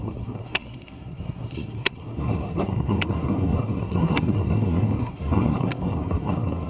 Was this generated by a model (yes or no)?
yes